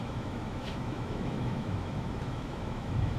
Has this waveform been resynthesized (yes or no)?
yes